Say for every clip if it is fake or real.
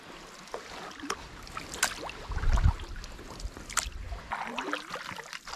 real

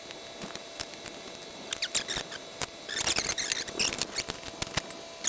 real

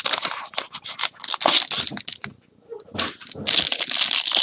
real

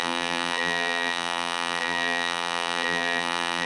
fake